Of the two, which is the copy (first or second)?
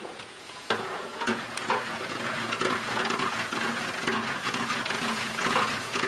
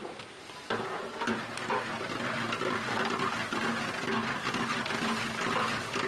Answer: first